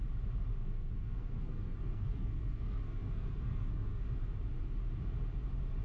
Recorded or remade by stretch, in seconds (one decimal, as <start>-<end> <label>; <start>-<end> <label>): 0.0-0.5 recorded; 0.5-4.0 remade; 4.0-5.8 recorded